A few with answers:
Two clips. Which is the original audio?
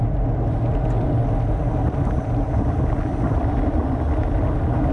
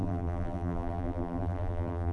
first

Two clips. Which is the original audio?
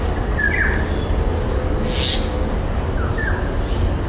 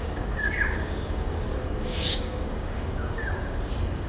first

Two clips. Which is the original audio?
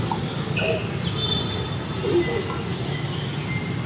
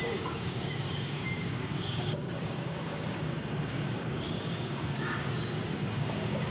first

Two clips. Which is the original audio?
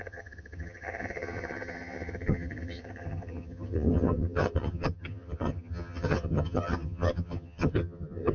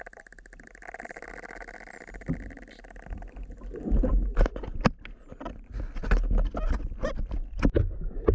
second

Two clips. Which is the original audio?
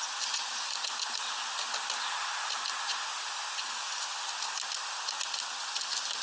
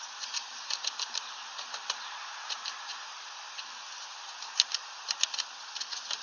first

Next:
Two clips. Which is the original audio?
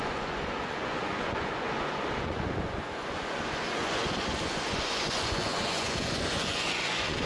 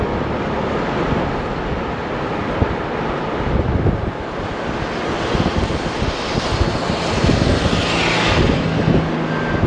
second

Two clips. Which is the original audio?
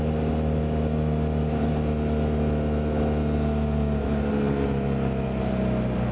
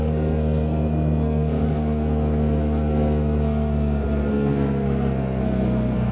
first